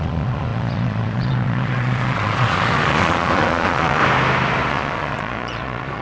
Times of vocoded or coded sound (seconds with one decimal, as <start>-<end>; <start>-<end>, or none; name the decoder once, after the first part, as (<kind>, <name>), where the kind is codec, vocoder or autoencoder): 0.0-4.0 (vocoder, Vocos); 4.7-6.0